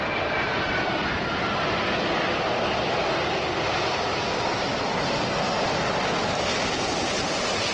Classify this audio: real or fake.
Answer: real